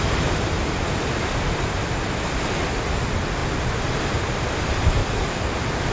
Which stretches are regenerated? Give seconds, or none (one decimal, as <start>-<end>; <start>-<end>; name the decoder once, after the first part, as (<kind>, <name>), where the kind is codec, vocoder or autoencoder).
5.0-5.5 (codec, DAC)

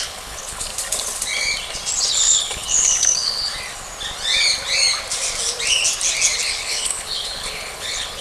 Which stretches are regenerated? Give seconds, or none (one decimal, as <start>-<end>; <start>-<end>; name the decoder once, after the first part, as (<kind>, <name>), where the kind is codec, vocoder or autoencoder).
0.0-0.7 (codec, HILCodec); 2.1-3.5; 6.5-8.2